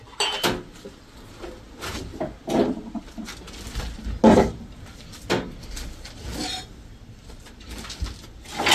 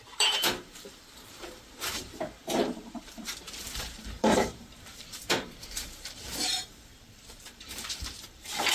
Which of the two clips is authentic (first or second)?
first